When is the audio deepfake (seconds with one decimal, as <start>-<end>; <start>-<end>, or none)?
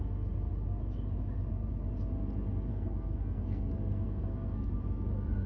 2.7-4.7